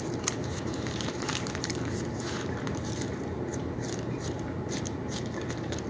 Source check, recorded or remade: remade